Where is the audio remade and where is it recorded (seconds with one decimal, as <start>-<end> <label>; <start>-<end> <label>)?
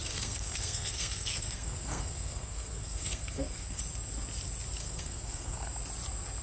0.0-3.8 remade; 3.8-4.8 recorded; 4.8-5.7 remade; 5.7-6.4 recorded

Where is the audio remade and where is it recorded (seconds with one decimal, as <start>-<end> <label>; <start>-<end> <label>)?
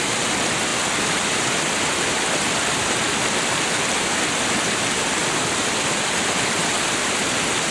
0.0-7.7 recorded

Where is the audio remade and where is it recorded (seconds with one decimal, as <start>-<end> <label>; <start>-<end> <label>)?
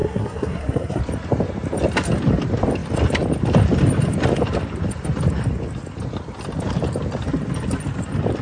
0.0-1.0 remade; 1.0-8.4 recorded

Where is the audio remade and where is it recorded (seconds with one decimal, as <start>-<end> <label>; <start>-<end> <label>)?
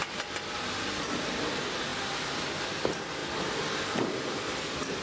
0.0-5.0 recorded